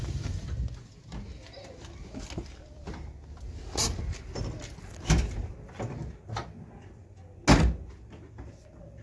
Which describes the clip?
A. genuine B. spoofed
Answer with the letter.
A